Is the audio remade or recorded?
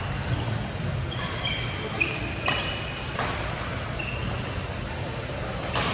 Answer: recorded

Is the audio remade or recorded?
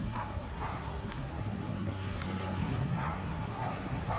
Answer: remade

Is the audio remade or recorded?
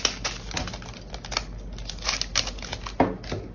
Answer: recorded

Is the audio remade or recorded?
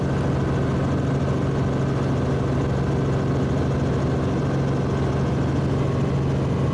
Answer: recorded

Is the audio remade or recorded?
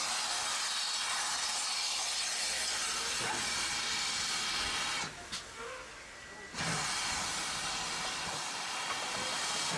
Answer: recorded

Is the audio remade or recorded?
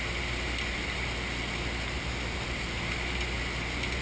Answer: recorded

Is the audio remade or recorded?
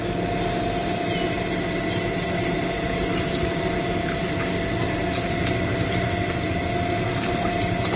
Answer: recorded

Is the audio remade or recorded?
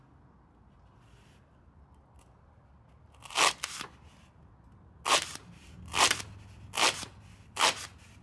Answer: recorded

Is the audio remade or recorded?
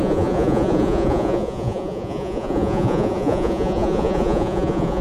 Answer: remade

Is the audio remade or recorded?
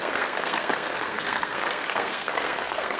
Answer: remade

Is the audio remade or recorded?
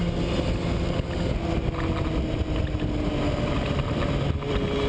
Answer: recorded